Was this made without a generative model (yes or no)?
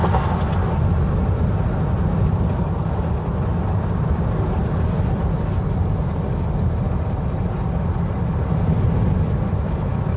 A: yes